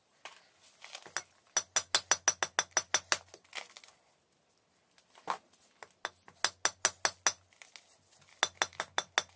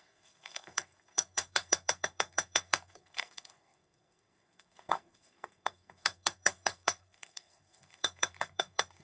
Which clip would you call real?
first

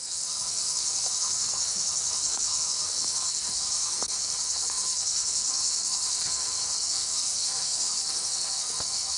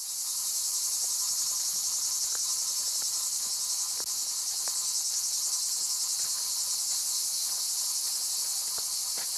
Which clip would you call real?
second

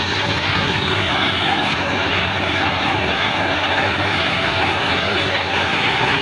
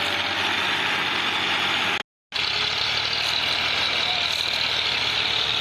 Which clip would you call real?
second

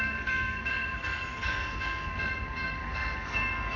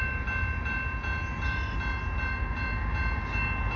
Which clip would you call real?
second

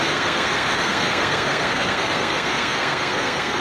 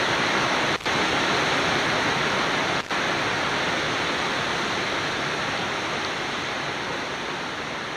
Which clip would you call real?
second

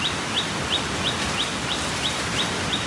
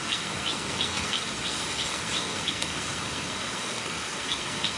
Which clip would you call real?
first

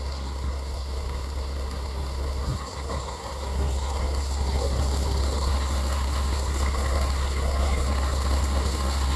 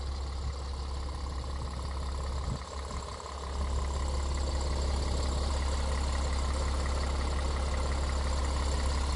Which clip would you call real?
second